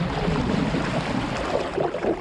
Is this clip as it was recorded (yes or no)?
yes